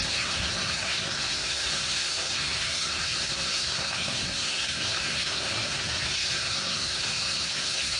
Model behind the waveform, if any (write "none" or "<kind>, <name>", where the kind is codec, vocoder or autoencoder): codec, SNAC